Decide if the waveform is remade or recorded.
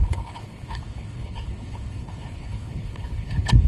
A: remade